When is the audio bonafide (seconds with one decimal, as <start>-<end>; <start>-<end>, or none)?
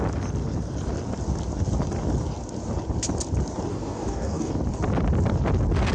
0.0-3.7; 4.5-5.9